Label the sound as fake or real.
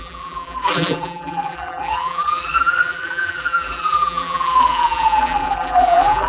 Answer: fake